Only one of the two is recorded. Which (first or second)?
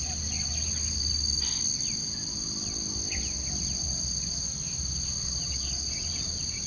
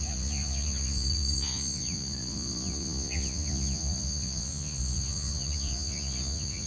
first